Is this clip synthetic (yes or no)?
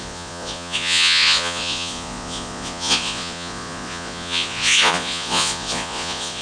yes